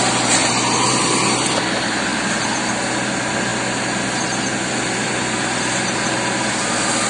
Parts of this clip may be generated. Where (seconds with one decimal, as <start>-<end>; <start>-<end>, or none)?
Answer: none